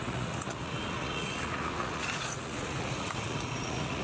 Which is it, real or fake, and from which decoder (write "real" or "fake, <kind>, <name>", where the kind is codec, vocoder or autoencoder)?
fake, vocoder, Vocos